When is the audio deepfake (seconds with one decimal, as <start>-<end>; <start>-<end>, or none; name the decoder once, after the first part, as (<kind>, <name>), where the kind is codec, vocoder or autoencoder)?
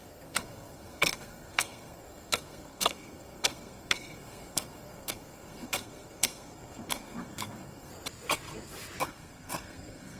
0.0-7.9 (codec, SNAC); 9.0-10.2